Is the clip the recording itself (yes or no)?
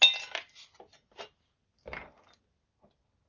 yes